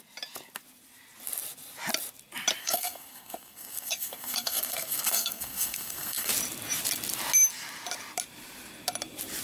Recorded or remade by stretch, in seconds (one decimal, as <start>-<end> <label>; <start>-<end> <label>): 0.0-2.6 recorded; 2.6-6.3 remade; 6.3-9.4 recorded